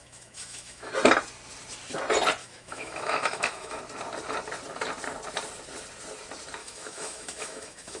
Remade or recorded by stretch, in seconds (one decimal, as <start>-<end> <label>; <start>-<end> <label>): 0.0-0.9 remade; 0.9-2.4 recorded; 2.4-3.8 remade; 3.8-6.6 recorded; 6.6-8.0 remade